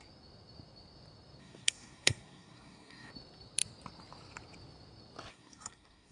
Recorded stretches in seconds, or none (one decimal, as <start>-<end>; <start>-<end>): 0.0-1.4; 3.1-5.3